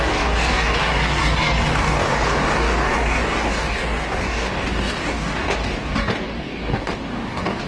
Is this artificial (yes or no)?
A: yes